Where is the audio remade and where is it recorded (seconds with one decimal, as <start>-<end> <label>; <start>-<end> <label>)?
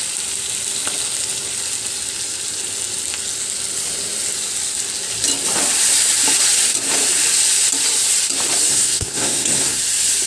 0.0-8.7 recorded; 8.7-9.8 remade; 9.8-10.3 recorded